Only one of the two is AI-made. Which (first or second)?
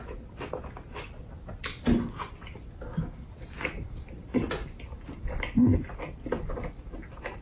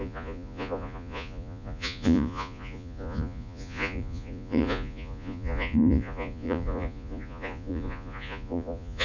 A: second